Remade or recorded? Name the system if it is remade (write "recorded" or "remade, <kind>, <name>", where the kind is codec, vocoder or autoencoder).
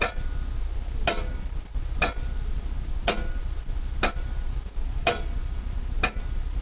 recorded